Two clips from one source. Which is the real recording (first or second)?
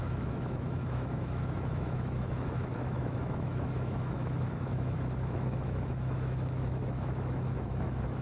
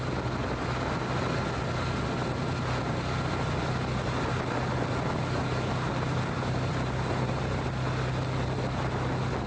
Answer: second